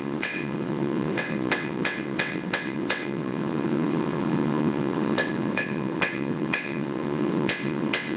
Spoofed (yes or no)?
yes